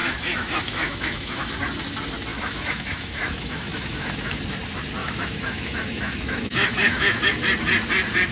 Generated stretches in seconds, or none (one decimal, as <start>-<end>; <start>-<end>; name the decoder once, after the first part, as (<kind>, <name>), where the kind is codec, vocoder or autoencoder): 0.0-1.5 (autoencoder, DAC-VAE); 2.3-4.4; 5.0-7.3